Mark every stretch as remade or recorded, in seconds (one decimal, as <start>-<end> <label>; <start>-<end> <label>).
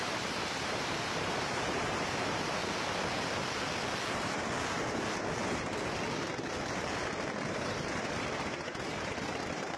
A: 0.0-2.6 remade; 2.6-7.5 recorded; 7.5-9.8 remade